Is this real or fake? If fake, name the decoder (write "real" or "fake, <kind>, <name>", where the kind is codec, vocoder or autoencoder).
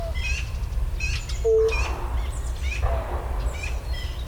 real